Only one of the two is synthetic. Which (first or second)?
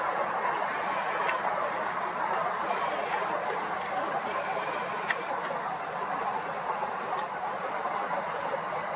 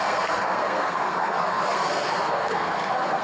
second